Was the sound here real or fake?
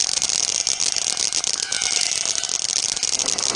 real